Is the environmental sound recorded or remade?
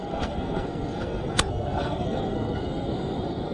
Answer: remade